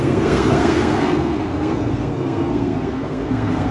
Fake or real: fake